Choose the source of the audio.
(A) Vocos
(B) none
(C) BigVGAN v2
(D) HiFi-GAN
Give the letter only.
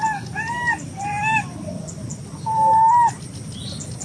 B